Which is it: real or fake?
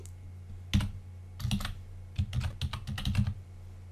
real